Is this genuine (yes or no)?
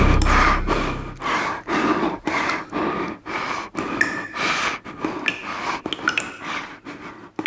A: yes